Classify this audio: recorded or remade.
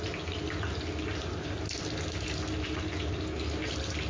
recorded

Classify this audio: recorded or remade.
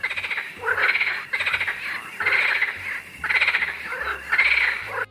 recorded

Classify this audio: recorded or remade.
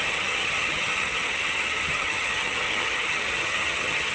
remade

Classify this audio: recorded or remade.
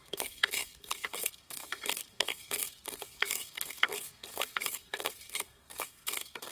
remade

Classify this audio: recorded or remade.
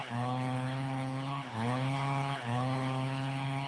remade